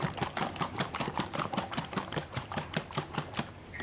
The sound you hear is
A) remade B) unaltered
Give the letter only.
A